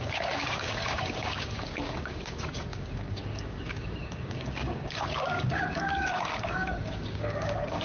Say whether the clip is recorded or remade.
remade